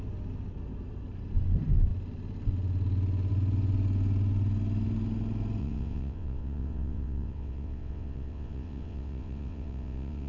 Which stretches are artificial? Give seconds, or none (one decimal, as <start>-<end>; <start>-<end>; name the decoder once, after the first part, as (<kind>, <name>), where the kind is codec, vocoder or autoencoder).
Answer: 5.6-10.3 (vocoder, WaveNeXt)